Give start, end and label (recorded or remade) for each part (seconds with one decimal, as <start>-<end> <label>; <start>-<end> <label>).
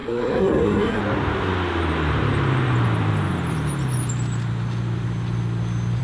0.0-1.0 remade; 1.0-6.0 recorded